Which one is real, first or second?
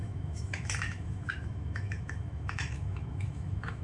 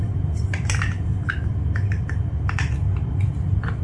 second